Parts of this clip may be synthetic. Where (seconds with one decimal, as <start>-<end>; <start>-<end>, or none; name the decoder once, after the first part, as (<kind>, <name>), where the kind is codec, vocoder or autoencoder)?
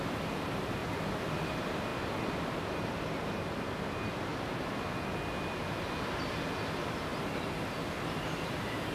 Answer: none